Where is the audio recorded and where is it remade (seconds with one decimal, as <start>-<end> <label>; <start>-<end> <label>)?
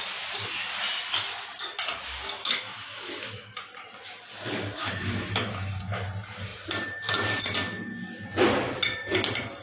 0.0-2.4 recorded; 2.4-3.6 remade; 3.6-4.8 recorded; 4.8-5.7 remade; 5.7-9.6 recorded